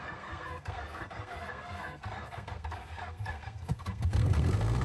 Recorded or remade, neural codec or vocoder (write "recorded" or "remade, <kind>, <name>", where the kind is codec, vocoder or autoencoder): remade, codec, SNAC